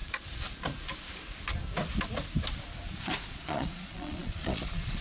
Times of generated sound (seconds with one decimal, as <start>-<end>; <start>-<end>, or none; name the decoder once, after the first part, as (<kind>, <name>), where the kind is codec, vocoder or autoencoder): 3.0-5.0 (vocoder, Vocos)